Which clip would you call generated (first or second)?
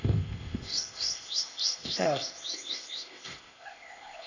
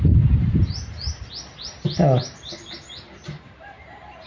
first